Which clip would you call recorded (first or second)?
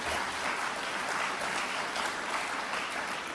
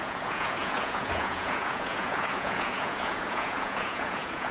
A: first